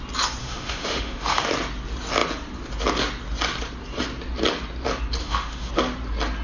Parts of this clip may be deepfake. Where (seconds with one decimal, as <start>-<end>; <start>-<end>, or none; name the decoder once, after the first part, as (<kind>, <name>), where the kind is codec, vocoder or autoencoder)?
0.4-1.5 (autoencoder, DAC-VAE); 5.2-5.7